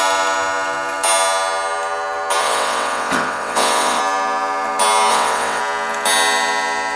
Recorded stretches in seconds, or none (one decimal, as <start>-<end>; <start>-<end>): 0.0-2.4; 4.0-5.1; 5.6-7.0